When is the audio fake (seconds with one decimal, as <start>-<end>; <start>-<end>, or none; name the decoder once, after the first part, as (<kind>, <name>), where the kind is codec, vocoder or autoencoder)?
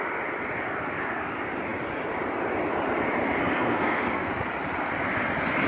3.4-4.3 (codec, SNAC)